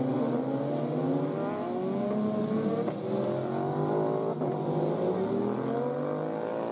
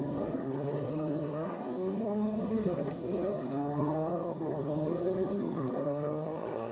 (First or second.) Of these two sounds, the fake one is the second